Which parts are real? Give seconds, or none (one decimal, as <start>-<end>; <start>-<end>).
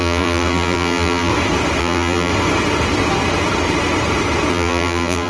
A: 1.3-1.8; 2.3-4.5